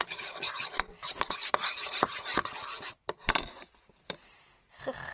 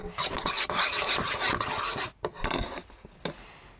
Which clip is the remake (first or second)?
first